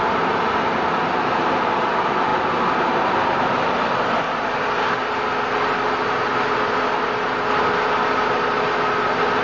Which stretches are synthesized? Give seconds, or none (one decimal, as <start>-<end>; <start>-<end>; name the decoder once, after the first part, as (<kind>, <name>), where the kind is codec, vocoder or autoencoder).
none